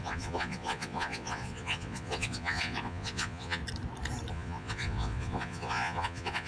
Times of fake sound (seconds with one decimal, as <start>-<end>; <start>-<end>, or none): 0.0-3.6; 4.3-6.5